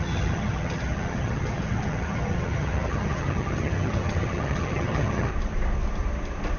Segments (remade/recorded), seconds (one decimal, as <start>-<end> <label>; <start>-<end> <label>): 0.0-5.3 remade; 5.3-6.6 recorded